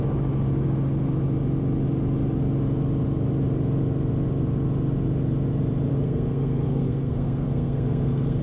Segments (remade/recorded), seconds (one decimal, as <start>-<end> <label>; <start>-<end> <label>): 0.0-5.9 recorded; 5.9-8.4 remade